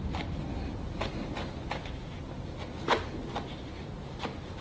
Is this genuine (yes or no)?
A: yes